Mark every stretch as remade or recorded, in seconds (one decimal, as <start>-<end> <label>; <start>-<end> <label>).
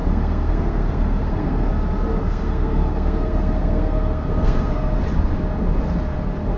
0.0-1.7 remade; 1.7-2.2 recorded; 2.2-5.0 remade; 5.0-6.6 recorded